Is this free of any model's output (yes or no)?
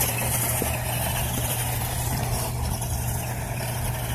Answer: no